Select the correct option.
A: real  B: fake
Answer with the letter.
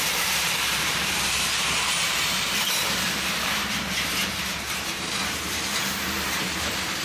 B